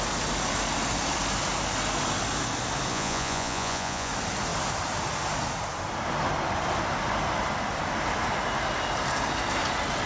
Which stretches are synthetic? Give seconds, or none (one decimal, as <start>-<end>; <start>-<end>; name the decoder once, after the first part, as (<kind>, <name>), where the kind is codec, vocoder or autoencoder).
2.9-4.1 (vocoder, Vocos)